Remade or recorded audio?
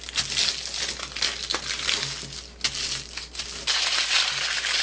recorded